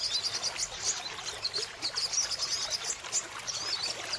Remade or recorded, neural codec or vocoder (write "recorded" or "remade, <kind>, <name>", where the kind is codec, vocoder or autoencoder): recorded